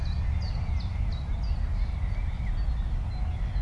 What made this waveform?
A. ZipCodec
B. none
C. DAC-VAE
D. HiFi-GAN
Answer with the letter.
B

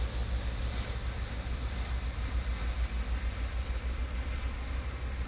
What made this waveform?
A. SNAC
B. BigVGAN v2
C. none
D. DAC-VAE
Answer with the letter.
C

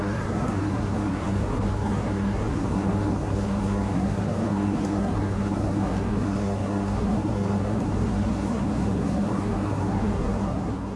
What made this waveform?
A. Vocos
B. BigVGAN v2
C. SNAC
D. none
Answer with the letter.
C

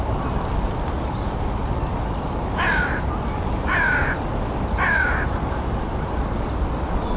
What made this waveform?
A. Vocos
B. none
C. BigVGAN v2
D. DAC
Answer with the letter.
B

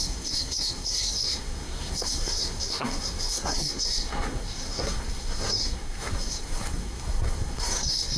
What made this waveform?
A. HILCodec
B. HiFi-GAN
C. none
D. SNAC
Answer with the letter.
D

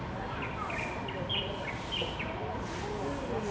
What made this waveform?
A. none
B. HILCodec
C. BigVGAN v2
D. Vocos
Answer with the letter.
A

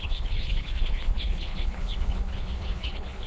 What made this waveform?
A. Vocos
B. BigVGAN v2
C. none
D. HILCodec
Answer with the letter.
D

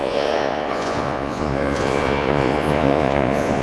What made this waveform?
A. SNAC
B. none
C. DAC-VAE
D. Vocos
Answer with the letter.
D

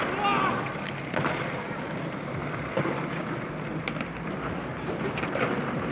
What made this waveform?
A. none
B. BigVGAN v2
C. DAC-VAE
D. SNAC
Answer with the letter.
A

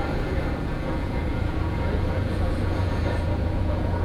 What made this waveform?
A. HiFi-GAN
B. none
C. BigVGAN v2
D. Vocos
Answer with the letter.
D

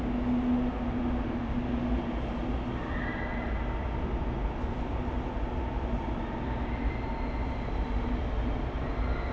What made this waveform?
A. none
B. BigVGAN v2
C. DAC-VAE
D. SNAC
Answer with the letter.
A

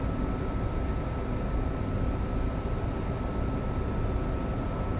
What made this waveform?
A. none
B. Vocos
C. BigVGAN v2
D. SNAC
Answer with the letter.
A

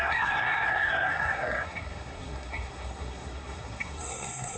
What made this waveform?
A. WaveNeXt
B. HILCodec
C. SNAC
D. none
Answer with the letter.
C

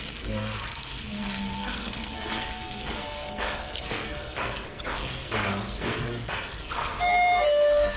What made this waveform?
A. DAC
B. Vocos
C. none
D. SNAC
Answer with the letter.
D